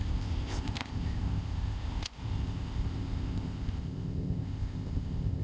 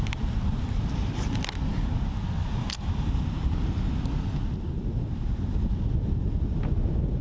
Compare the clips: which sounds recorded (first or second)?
second